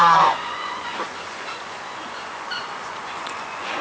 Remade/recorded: remade